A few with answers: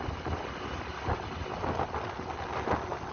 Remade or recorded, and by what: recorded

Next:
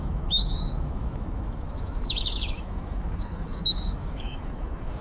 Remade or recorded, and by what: remade, autoencoder, DAC-VAE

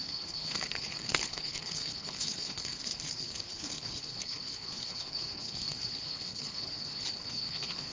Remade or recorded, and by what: remade, codec, HILCodec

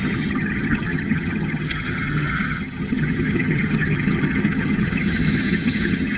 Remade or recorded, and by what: remade, vocoder, HiFi-GAN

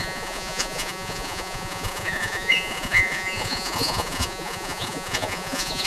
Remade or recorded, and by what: remade, vocoder, Vocos